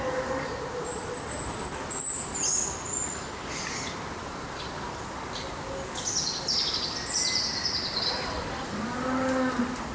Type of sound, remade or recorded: recorded